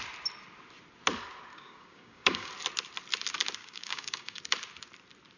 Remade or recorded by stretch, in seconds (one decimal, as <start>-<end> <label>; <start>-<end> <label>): 0.0-1.5 recorded; 1.5-2.5 remade; 2.5-3.6 recorded; 3.6-4.4 remade; 4.4-5.4 recorded